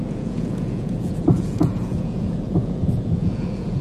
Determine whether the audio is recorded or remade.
remade